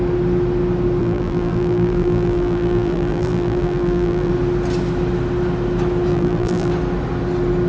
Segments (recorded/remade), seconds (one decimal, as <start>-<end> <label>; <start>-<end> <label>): 0.0-1.0 recorded; 1.0-4.3 remade; 4.3-6.1 recorded; 6.1-6.7 remade; 6.7-7.7 recorded